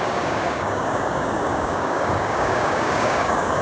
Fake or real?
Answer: fake